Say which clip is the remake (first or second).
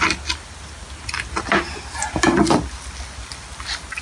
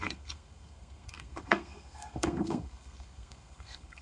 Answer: second